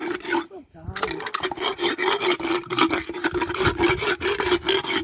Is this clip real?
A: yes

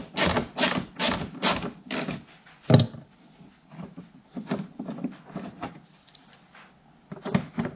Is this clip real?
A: yes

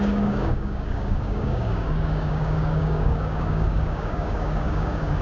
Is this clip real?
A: no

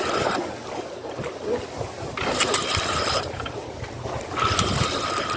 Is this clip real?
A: yes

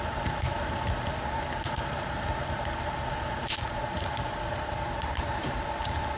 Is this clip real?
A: yes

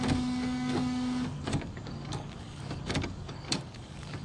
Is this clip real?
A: no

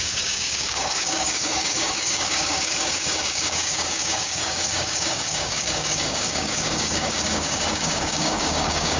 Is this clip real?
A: no